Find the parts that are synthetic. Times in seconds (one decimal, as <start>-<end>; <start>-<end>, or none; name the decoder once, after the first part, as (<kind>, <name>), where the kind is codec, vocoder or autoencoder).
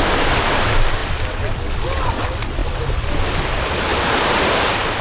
1.0-1.6 (vocoder, BigVGAN v2); 3.9-4.6